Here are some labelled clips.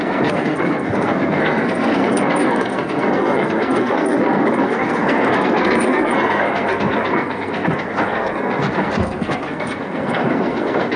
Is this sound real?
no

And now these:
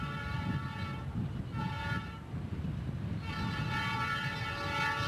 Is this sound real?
yes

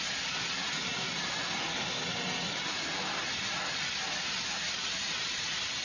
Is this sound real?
yes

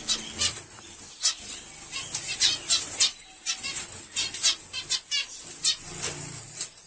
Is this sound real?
yes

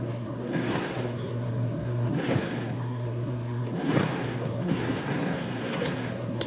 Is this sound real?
no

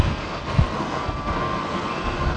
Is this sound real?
no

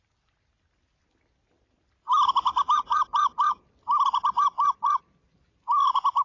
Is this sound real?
yes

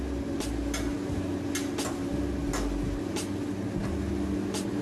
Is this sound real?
yes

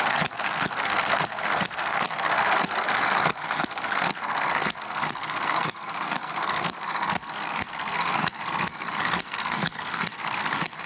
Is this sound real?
no